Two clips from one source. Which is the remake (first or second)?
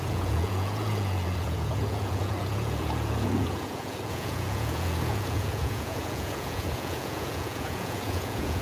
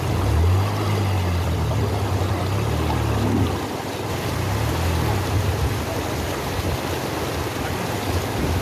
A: first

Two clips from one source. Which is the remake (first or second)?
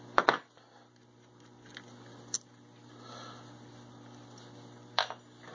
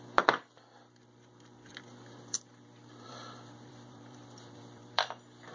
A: second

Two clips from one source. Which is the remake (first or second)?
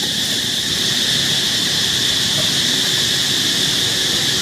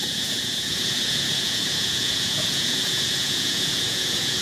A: second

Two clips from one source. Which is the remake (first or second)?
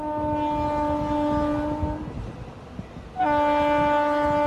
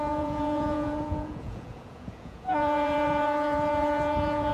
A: second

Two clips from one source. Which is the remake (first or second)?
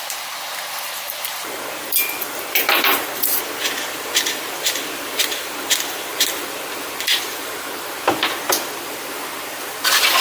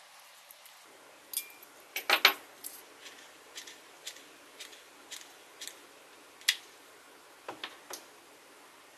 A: first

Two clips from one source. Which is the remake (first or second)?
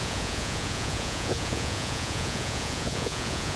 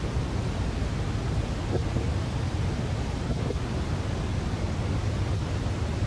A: first